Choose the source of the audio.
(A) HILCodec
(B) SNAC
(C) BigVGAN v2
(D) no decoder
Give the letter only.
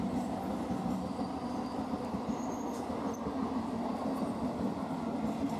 D